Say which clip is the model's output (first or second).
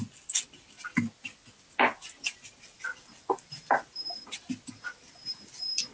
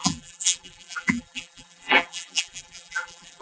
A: second